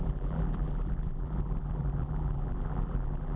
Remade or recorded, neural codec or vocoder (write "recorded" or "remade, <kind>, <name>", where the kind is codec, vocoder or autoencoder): remade, vocoder, BigVGAN v2